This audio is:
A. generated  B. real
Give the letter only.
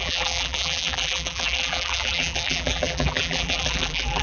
A